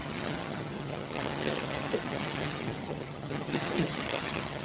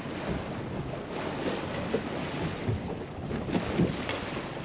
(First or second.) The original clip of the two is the second